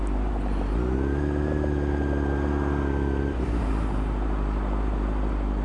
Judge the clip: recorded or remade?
recorded